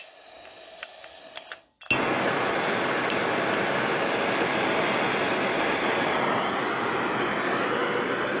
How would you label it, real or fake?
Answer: real